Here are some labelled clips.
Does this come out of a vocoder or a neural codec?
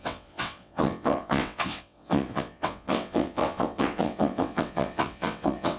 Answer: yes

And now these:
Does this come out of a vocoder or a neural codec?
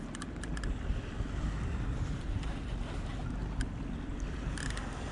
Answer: no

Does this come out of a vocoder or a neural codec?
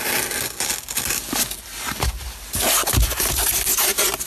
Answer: no